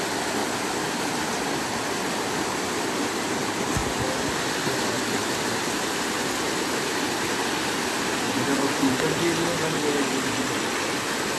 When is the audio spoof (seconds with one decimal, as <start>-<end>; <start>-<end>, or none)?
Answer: 0.4-1.6; 3.8-5.9